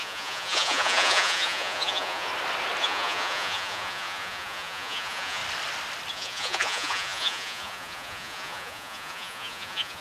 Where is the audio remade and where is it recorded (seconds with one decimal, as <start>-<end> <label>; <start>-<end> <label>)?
0.0-2.3 remade; 2.3-2.8 recorded; 2.8-5.4 remade; 5.4-6.1 recorded; 6.1-10.0 remade